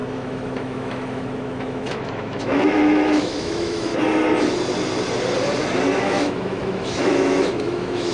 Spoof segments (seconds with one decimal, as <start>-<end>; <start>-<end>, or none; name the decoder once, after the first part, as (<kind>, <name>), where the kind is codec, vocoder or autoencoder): 0.0-3.9 (autoencoder, DAC-VAE); 6.0-8.1